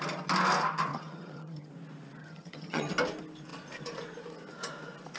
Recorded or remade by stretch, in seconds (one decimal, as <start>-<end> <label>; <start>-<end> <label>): 0.0-0.9 recorded; 0.9-1.7 remade; 1.7-2.2 recorded; 2.2-2.9 remade; 2.9-5.2 recorded